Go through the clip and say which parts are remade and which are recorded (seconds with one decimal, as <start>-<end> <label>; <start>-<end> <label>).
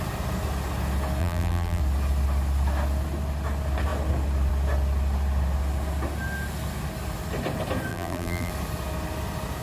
0.0-1.2 recorded; 1.2-1.8 remade; 1.8-7.9 recorded; 7.9-8.5 remade; 8.5-9.6 recorded